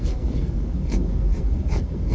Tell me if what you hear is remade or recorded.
remade